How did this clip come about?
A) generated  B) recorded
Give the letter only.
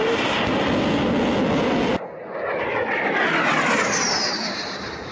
B